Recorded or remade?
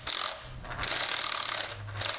recorded